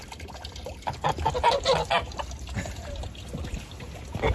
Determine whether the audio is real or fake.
real